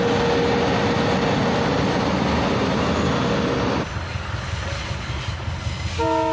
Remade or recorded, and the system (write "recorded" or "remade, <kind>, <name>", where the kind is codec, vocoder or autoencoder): recorded